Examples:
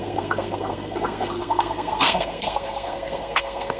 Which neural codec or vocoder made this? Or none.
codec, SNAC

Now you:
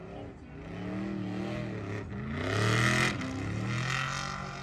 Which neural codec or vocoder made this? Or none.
none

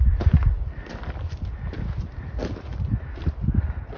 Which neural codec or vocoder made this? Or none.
none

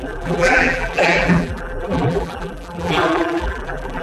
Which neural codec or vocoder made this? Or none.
vocoder, BigVGAN v2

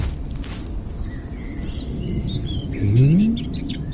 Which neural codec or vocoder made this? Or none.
none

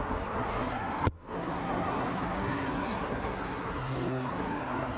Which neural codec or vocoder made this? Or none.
codec, SNAC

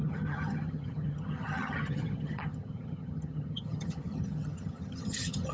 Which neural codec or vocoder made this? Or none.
vocoder, HiFi-GAN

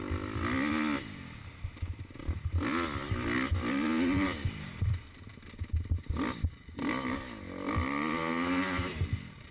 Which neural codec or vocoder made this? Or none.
none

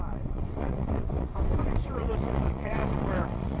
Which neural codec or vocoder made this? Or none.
vocoder, WaveNeXt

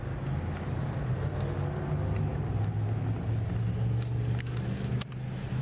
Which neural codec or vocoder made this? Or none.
none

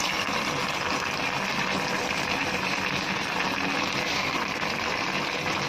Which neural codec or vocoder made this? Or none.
none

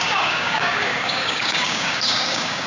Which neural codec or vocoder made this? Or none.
codec, DAC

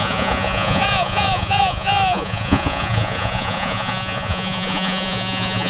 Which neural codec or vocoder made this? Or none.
vocoder, Vocos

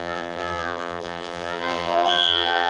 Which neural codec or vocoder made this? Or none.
vocoder, BigVGAN v2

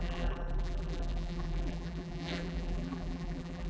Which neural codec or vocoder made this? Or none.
vocoder, BigVGAN v2